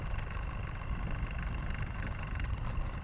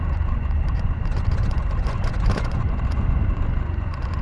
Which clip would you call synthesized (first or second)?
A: second